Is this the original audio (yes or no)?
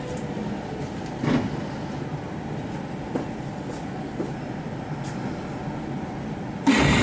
yes